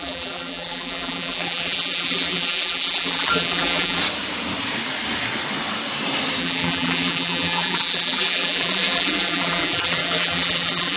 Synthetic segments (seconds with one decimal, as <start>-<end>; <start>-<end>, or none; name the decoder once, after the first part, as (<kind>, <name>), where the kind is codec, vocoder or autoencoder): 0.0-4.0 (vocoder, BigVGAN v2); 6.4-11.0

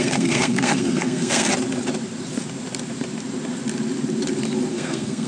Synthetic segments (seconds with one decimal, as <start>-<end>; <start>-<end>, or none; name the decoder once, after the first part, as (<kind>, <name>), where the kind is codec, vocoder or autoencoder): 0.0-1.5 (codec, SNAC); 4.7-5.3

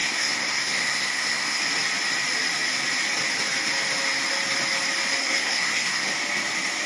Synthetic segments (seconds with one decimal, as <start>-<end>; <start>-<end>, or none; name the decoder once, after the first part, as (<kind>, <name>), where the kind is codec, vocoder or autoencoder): 0.0-1.6 (codec, SNAC); 5.2-6.1

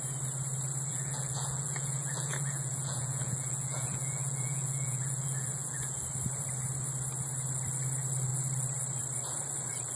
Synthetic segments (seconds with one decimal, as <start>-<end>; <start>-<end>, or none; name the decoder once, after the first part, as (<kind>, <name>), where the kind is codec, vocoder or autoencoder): 0.9-6.0 (vocoder, Vocos)